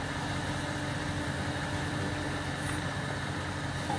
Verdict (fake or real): real